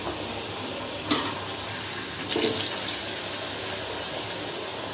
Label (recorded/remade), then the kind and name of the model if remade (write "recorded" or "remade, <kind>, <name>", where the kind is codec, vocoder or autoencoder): recorded